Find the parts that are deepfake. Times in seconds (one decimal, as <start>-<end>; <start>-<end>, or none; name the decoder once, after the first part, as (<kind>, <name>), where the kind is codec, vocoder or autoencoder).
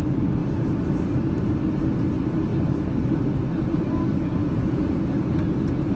4.4-5.0 (vocoder, Vocos)